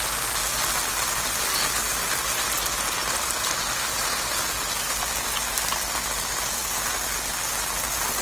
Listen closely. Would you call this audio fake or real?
real